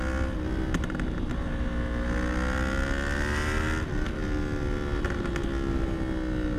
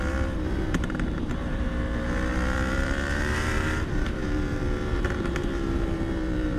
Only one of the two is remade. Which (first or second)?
second